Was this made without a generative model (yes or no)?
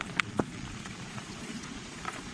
no